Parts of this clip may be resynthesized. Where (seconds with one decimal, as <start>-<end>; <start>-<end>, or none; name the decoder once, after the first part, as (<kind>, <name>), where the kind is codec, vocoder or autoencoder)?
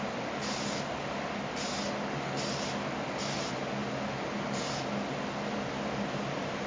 none